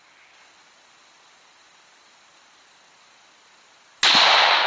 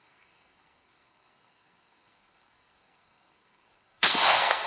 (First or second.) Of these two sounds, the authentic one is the first